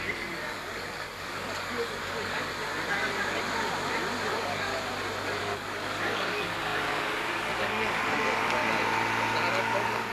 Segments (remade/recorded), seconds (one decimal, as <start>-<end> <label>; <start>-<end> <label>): 0.0-2.5 remade; 2.5-4.3 recorded; 4.3-4.7 remade; 4.7-5.4 recorded; 5.4-8.6 remade; 8.6-9.5 recorded; 9.5-10.1 remade